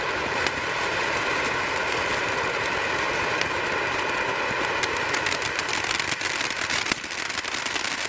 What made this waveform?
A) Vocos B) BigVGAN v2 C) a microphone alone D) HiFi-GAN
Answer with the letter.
C